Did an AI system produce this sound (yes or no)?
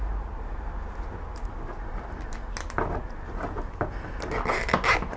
no